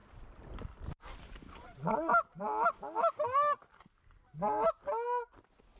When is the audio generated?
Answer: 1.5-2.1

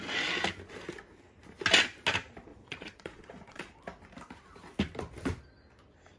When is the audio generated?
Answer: 2.5-3.8

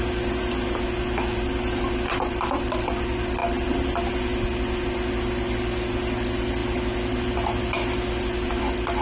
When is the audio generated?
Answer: none

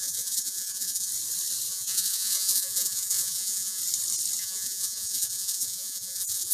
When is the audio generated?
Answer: 0.0-1.1; 1.7-3.8; 4.4-6.5

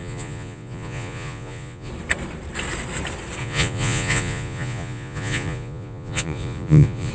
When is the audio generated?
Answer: 0.0-1.9; 3.4-7.1

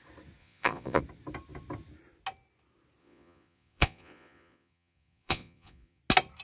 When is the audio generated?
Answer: 0.4-1.0; 3.0-6.0